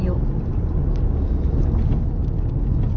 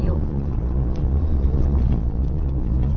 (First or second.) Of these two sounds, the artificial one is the second